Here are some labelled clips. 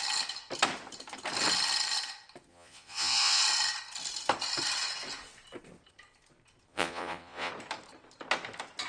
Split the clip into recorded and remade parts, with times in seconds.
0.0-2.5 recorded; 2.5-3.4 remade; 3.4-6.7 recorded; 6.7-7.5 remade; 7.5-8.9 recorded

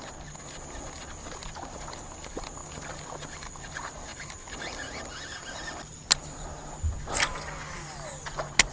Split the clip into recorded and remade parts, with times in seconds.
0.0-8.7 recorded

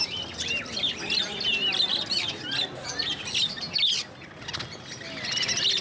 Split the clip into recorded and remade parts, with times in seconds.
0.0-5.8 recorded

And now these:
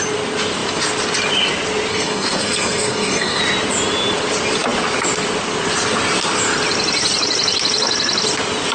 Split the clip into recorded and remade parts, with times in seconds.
0.0-1.9 recorded; 1.9-3.4 remade; 3.4-8.7 recorded

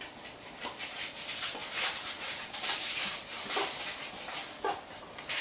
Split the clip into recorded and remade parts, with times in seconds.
0.0-5.4 remade

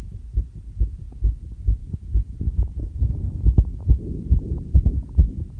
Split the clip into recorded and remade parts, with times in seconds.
0.0-5.6 recorded

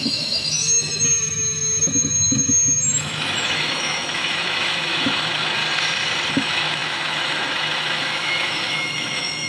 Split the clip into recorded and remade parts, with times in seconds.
0.0-5.6 remade; 5.6-6.3 recorded; 6.3-9.5 remade